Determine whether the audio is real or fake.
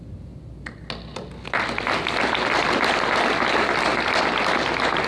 real